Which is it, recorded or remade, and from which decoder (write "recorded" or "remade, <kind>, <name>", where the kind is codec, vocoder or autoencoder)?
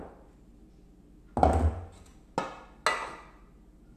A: recorded